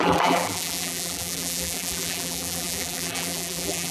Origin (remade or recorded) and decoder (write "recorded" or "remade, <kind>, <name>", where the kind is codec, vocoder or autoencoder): remade, vocoder, BigVGAN v2